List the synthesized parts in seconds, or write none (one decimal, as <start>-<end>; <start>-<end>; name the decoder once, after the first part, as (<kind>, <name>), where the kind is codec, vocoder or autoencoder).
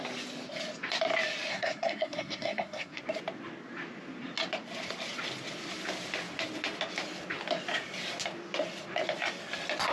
1.5-3.0 (codec, SNAC)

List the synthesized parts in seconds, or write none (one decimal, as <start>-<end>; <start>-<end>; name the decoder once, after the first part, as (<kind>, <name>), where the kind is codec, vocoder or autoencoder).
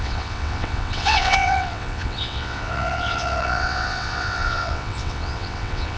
0.0-6.0 (vocoder, WaveNeXt)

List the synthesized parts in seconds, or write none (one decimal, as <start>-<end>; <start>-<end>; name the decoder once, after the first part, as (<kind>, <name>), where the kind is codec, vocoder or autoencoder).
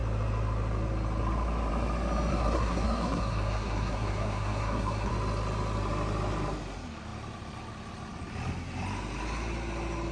2.3-5.1 (codec, SNAC)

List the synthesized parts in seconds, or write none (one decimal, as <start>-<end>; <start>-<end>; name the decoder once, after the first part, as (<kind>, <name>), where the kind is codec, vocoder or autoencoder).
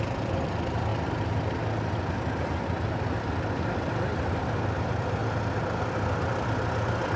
0.0-0.9 (vocoder, BigVGAN v2); 2.4-5.2; 5.8-7.2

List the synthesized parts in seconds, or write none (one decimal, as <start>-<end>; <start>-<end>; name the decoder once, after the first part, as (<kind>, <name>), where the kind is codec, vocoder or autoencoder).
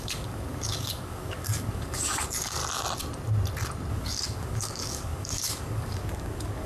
0.0-2.6 (codec, DAC); 3.9-6.7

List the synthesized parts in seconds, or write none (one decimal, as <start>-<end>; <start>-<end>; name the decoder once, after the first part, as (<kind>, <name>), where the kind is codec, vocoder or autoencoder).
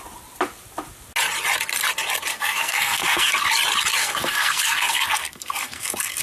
2.3-3.3 (codec, SNAC); 4.0-6.2